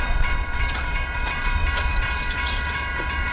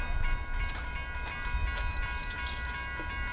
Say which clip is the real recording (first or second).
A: second